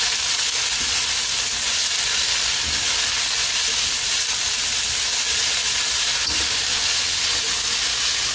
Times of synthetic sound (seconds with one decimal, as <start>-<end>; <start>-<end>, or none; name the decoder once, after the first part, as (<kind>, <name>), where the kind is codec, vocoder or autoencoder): 6.7-7.4 (vocoder, WaveNeXt)